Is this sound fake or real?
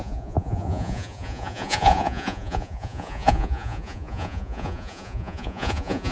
fake